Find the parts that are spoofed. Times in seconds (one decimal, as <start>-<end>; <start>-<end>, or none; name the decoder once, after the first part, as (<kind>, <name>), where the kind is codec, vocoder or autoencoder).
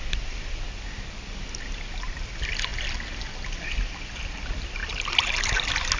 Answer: none